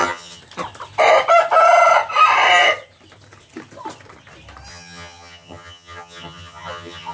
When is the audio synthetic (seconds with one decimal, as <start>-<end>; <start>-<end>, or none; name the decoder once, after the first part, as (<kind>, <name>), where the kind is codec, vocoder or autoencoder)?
0.0-0.4 (vocoder, HiFi-GAN); 4.7-7.1